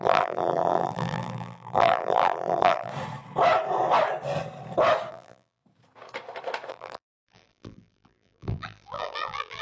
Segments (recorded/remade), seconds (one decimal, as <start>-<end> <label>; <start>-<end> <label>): 0.0-2.9 remade; 2.9-5.1 recorded; 5.1-5.6 remade; 5.6-6.7 recorded; 6.7-9.6 remade